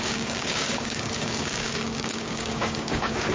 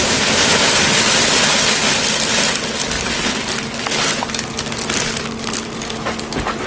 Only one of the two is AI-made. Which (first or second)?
first